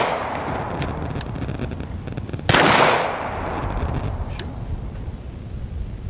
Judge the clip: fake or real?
real